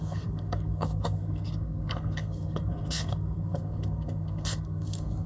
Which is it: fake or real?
fake